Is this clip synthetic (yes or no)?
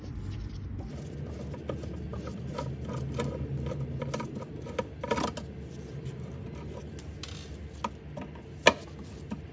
no